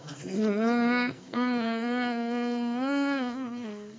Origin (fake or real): fake